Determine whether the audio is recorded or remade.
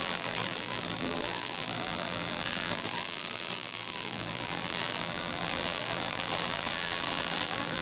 remade